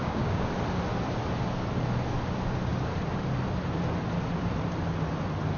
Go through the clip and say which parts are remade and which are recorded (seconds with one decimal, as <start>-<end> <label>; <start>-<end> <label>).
0.0-0.5 remade; 0.5-5.6 recorded

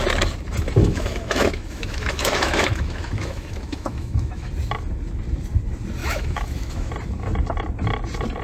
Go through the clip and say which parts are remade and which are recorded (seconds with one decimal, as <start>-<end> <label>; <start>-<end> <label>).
0.0-0.8 recorded; 0.8-4.5 remade; 4.5-6.0 recorded; 6.0-6.9 remade; 6.9-8.4 recorded

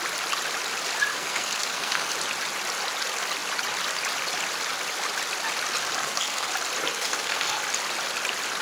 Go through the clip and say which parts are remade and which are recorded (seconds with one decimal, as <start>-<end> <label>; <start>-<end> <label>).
0.0-1.1 recorded; 1.1-2.1 remade; 2.1-6.0 recorded; 6.0-6.5 remade; 6.5-6.9 recorded; 6.9-7.6 remade; 7.6-8.6 recorded

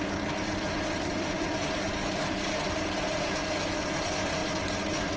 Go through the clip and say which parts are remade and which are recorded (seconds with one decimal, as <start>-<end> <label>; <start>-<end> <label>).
0.0-5.2 recorded

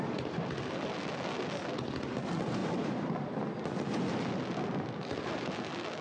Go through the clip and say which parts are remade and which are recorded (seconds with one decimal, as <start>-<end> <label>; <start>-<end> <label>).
0.0-6.0 recorded

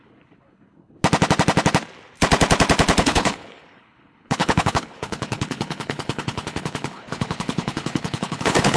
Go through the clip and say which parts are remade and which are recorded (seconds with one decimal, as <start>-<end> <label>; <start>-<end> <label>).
0.0-1.0 remade; 1.0-3.0 recorded; 3.0-8.8 remade

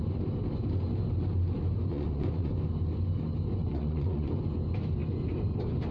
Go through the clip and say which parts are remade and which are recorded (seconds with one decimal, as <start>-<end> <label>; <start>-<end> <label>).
0.0-1.9 recorded; 1.9-2.5 remade; 2.5-3.6 recorded; 3.6-4.3 remade; 4.3-5.9 recorded

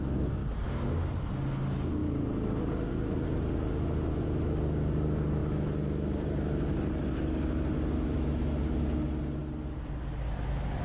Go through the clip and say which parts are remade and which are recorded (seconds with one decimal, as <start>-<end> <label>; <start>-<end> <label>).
0.0-10.8 recorded